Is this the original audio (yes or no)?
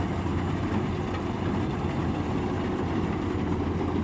yes